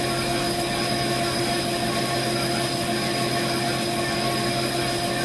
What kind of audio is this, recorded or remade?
recorded